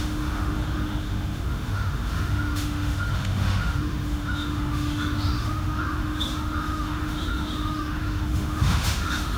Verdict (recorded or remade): remade